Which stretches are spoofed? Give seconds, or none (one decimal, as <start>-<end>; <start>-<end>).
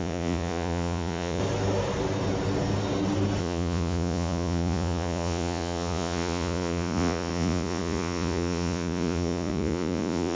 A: 0.0-1.4; 3.4-10.3